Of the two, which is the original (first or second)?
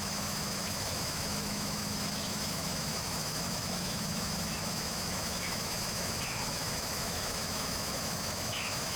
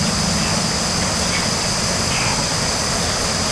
second